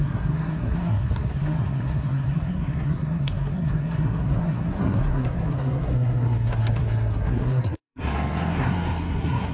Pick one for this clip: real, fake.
fake